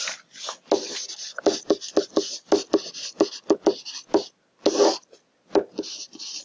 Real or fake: real